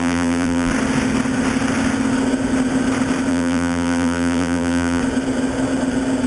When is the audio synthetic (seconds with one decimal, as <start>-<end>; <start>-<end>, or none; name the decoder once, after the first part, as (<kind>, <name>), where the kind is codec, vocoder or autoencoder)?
0.0-0.7 (vocoder, BigVGAN v2); 3.3-5.0